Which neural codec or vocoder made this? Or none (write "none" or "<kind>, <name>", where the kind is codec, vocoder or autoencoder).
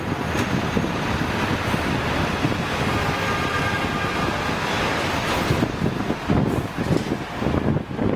none